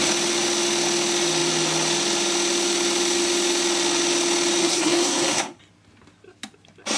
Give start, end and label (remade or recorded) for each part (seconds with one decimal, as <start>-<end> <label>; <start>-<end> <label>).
0.0-4.6 recorded; 4.6-5.6 remade; 5.6-7.0 recorded